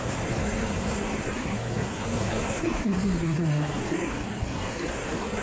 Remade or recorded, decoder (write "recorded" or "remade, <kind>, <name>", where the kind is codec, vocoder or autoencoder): remade, codec, SNAC